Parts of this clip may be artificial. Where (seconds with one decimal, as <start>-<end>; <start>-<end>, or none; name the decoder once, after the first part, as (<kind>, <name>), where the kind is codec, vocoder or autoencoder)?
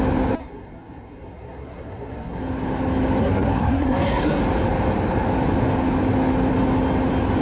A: 0.4-2.4 (codec, SNAC); 3.2-4.4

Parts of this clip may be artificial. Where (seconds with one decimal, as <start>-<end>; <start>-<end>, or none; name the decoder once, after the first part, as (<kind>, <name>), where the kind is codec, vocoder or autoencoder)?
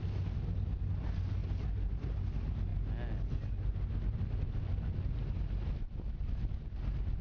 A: none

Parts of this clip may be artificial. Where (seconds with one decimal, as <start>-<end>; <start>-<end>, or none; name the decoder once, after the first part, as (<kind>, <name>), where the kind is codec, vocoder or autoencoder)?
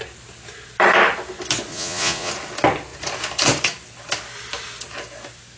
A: 1.7-2.3 (vocoder, Vocos)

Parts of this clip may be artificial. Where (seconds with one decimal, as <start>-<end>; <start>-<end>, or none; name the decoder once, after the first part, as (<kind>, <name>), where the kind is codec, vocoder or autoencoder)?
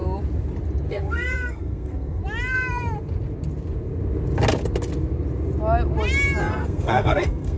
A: 0.9-2.2 (codec, SNAC); 6.4-7.6